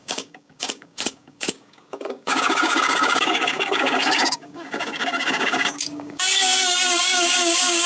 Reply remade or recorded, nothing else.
remade